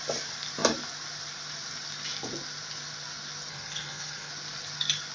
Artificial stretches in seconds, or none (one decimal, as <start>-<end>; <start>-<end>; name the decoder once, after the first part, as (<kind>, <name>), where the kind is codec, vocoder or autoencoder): 3.5-4.3 (codec, HILCodec)